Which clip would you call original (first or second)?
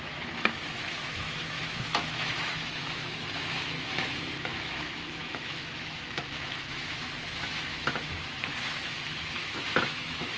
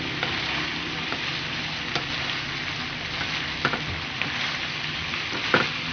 second